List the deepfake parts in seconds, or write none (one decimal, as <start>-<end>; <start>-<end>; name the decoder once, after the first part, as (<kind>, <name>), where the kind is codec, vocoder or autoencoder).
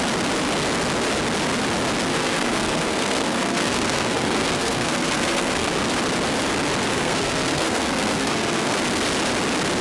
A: 2.1-5.8 (codec, SNAC); 6.9-8.8